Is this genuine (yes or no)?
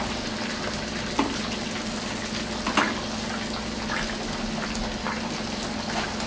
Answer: yes